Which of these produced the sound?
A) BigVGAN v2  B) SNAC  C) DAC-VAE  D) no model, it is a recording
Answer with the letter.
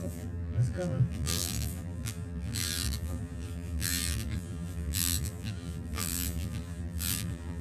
A